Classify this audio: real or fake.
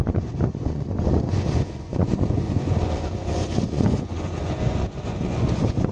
fake